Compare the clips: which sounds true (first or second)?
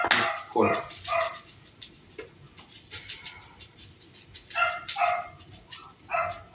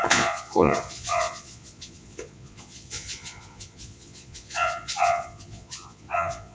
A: first